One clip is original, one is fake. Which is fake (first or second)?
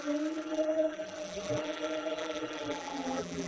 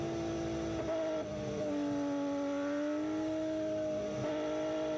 first